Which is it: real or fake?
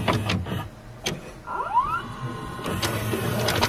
real